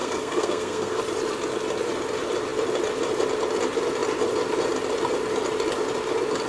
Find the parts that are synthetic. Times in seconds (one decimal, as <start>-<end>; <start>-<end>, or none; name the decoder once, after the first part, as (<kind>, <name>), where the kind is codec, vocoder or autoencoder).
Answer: 0.0-1.0 (codec, SNAC)